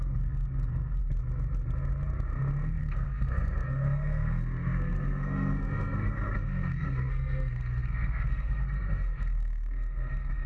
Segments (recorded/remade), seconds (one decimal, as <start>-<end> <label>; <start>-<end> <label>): 0.0-1.0 remade; 1.0-2.8 recorded; 2.8-10.5 remade